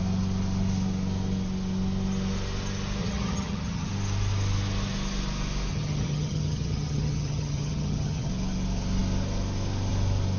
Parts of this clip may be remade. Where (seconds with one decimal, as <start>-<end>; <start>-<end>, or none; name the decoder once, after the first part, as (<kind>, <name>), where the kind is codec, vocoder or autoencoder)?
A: 3.0-3.9 (vocoder, HiFi-GAN); 5.7-8.3